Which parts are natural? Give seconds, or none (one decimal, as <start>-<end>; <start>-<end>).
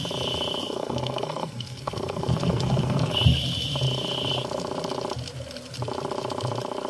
0.0-0.6; 3.1-6.9